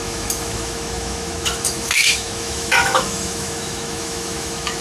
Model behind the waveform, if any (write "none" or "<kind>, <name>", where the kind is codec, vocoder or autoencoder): autoencoder, DAC-VAE